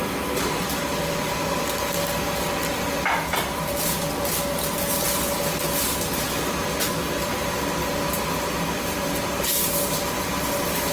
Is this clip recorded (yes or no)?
yes